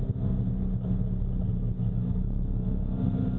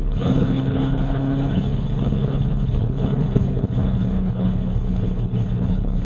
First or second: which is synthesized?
second